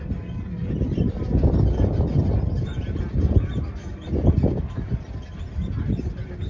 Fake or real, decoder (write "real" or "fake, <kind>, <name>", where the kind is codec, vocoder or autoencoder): real